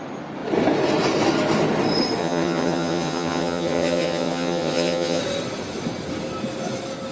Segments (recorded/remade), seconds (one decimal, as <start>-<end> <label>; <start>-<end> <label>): 0.0-2.2 recorded; 2.2-5.2 remade; 5.2-7.1 recorded